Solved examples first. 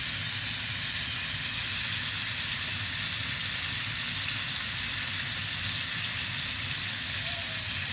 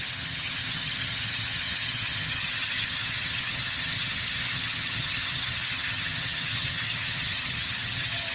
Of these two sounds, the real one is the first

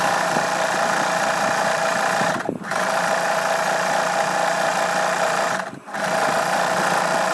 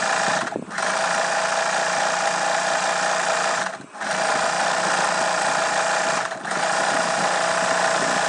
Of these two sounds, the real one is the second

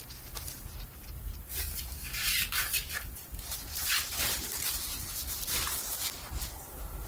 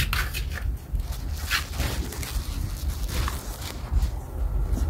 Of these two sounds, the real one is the second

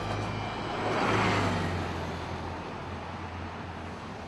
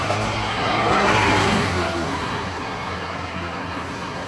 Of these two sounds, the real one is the first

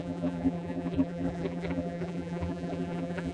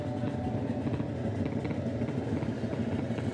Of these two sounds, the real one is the second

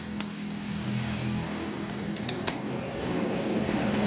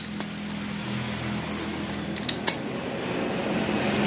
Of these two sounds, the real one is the second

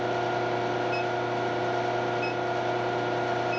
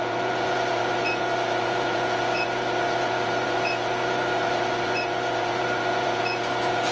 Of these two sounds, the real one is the first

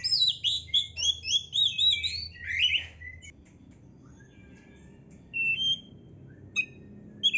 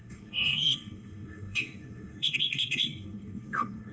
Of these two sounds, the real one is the first